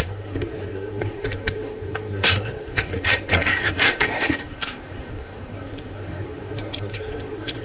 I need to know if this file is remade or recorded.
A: remade